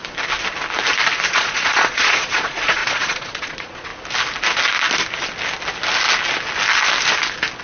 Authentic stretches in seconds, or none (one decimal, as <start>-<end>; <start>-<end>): 0.0-1.3; 3.9-7.6